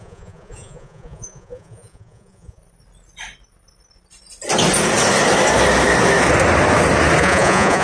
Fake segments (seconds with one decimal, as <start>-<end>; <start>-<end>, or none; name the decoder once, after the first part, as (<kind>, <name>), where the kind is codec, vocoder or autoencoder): 0.0-2.6 (vocoder, Vocos); 7.2-7.8